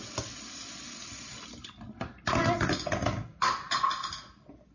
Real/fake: real